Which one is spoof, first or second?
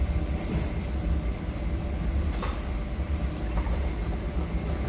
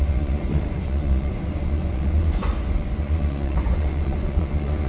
second